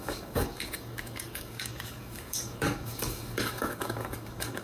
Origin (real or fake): fake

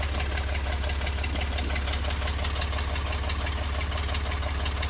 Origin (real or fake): real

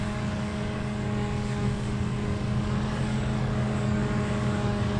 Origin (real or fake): fake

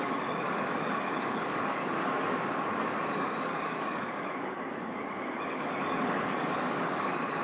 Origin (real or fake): fake